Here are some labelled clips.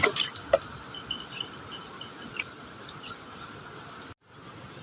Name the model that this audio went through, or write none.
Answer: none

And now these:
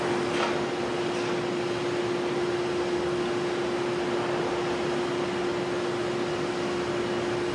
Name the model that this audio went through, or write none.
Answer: none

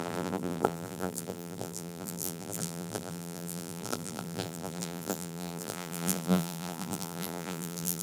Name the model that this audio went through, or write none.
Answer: vocoder, BigVGAN v2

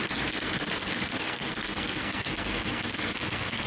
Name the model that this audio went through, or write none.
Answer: codec, SNAC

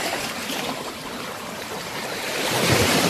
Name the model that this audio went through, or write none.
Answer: vocoder, BigVGAN v2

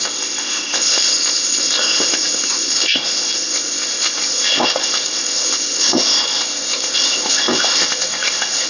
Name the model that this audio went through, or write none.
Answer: codec, ZipCodec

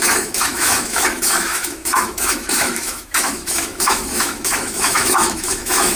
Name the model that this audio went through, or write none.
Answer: autoencoder, DAC-VAE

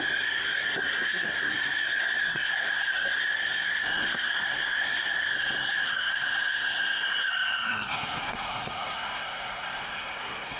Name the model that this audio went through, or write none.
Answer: codec, SNAC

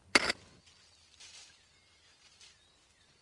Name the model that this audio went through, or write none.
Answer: none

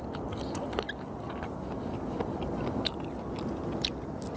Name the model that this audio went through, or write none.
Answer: none